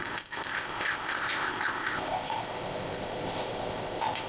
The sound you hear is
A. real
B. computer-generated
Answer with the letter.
B